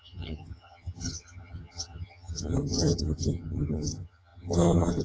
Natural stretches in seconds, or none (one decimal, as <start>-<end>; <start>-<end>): none